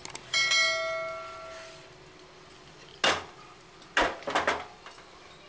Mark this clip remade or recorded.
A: recorded